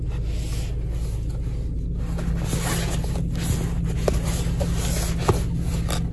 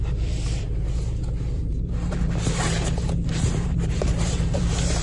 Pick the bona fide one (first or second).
first